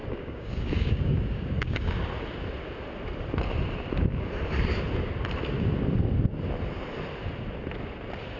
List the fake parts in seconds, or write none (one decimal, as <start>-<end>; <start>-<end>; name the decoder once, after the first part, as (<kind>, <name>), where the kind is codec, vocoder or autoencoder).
0.0-2.0 (codec, DAC)